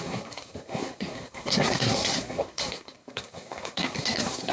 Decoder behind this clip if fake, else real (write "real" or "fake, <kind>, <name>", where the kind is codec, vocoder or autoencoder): fake, codec, SNAC